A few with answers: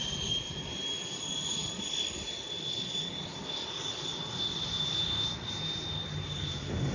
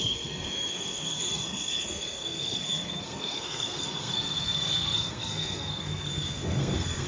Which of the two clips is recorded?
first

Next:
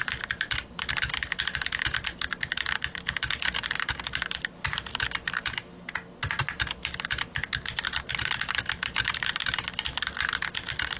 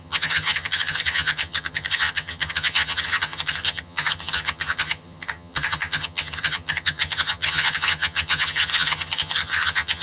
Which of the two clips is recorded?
first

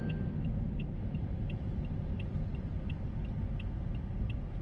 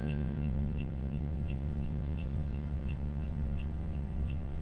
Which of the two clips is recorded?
first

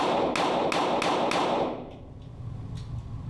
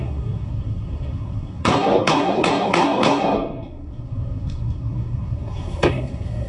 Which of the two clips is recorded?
first